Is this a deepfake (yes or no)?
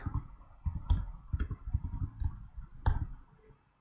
no